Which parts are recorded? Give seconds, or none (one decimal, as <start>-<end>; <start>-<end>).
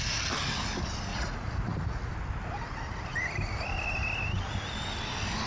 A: 0.0-1.1; 2.1-5.5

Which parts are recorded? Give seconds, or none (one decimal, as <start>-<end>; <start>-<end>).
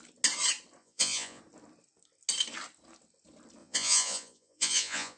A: 0.0-0.8; 1.4-3.6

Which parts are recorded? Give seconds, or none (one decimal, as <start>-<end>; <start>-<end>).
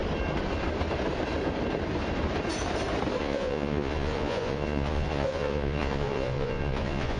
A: 0.0-3.2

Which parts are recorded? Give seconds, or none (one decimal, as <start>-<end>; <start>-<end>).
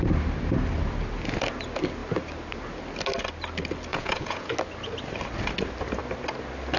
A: 0.0-3.9; 4.5-6.8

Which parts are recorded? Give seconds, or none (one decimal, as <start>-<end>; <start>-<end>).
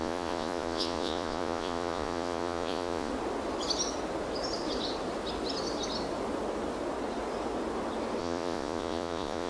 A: 3.1-8.2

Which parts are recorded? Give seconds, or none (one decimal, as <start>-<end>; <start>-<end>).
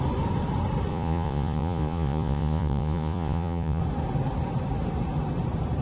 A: 0.0-0.9; 3.8-5.8